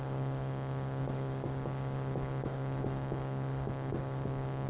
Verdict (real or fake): fake